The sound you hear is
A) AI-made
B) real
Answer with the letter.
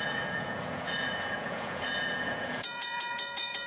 A